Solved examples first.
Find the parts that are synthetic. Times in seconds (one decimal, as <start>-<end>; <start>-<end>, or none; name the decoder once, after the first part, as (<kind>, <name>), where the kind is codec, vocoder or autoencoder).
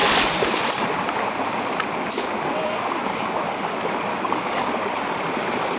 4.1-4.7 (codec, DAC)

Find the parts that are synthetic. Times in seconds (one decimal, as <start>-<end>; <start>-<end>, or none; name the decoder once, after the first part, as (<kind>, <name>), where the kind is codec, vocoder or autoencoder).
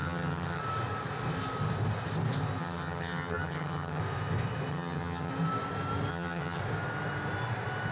0.0-0.6 (vocoder, HiFi-GAN); 2.6-4.0; 4.7-5.3; 6.1-6.6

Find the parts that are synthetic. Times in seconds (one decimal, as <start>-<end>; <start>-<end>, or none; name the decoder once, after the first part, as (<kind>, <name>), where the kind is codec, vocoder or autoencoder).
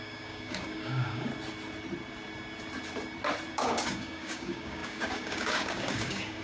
0.0-1.3 (codec, DAC); 3.5-6.4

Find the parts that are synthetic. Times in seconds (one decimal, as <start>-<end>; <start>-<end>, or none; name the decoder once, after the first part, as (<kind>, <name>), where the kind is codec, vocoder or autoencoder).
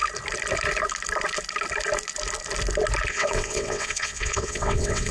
3.1-5.1 (vocoder, WaveNeXt)